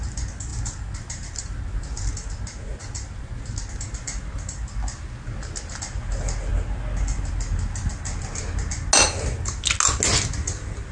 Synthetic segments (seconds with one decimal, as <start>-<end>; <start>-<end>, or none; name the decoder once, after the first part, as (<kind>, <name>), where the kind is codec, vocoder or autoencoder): none